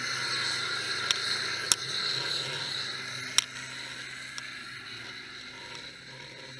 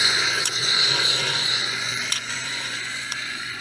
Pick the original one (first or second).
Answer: first